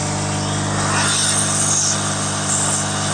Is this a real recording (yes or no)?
yes